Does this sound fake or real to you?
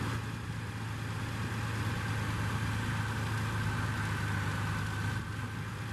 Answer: real